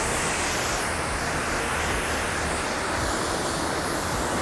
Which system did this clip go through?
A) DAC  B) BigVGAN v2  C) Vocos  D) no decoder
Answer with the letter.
D